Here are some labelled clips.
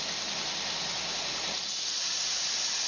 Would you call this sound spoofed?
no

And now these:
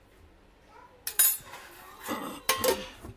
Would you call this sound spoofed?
no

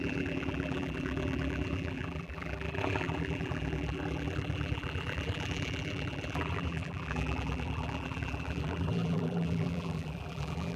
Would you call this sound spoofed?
yes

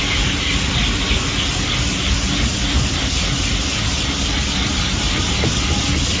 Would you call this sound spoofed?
no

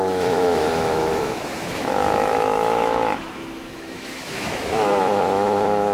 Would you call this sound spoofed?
yes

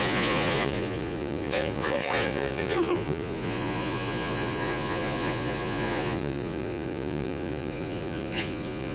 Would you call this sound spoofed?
yes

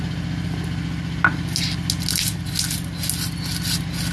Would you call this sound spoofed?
no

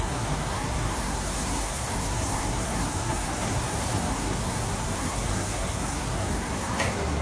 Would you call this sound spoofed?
yes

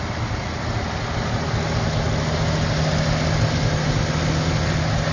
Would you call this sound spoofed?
no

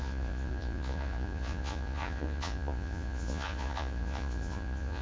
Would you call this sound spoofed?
yes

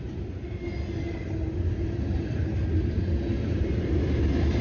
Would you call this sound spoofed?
no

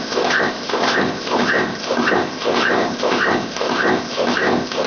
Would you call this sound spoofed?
yes